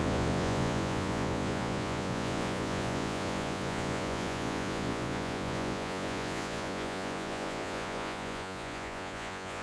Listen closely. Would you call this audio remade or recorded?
remade